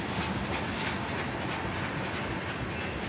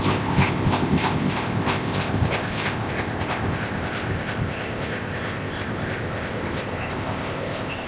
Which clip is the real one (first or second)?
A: first